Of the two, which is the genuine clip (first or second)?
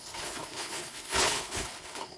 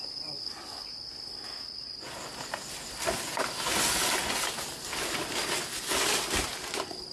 second